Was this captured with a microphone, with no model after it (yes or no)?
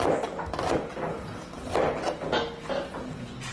yes